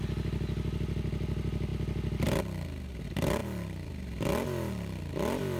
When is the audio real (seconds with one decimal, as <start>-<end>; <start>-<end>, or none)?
0.0-3.4; 3.9-5.6